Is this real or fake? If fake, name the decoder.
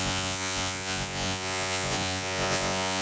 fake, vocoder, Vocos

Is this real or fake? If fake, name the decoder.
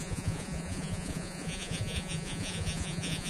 fake, vocoder, Vocos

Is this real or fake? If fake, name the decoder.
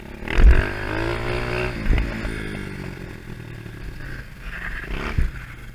real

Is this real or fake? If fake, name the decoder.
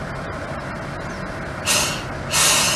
real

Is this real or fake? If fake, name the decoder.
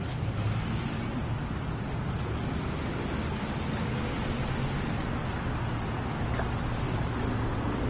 real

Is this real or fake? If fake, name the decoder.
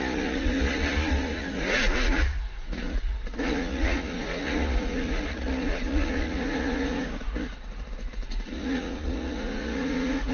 fake, vocoder, Vocos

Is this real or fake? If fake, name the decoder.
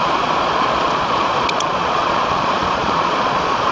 fake, vocoder, Vocos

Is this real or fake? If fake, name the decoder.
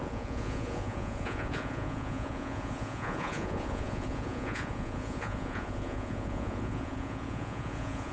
fake, vocoder, Vocos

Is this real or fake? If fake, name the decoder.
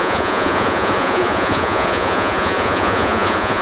fake, vocoder, Vocos